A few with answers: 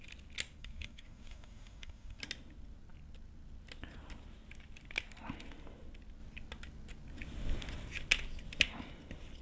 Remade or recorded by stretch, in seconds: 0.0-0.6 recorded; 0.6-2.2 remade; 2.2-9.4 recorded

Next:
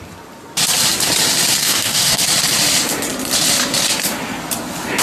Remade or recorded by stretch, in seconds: 0.0-1.6 recorded; 1.6-2.2 remade; 2.2-5.0 recorded